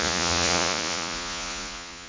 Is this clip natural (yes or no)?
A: no